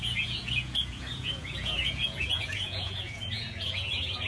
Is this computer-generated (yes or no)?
yes